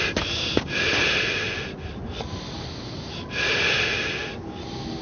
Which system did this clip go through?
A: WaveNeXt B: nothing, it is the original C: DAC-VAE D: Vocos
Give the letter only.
B